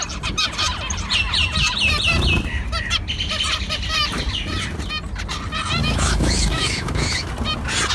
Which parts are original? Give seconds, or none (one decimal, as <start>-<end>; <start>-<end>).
0.0-5.8; 7.3-7.9